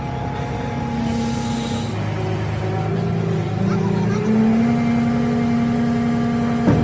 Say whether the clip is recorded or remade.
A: recorded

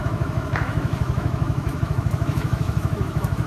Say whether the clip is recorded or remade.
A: remade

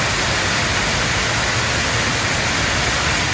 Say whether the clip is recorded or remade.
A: recorded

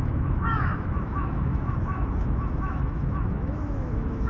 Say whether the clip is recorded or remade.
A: remade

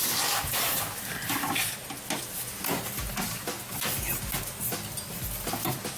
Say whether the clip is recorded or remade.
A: recorded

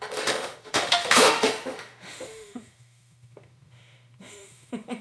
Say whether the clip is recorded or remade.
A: remade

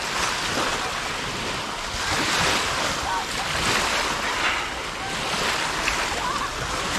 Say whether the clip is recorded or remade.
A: recorded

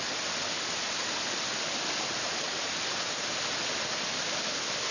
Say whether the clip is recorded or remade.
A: recorded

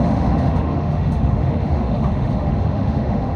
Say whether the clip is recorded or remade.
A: remade